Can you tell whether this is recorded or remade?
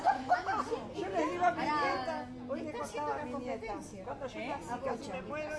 recorded